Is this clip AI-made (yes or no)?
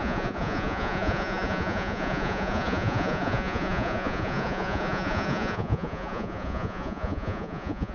yes